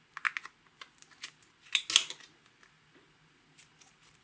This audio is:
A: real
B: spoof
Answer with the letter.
A